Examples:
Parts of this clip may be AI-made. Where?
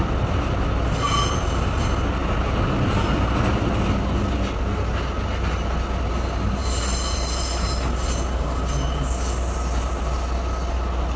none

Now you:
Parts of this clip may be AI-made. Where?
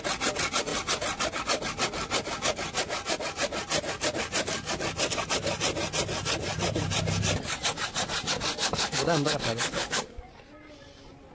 8.6-10.3 (codec, DAC)